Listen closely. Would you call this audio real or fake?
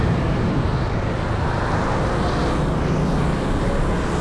real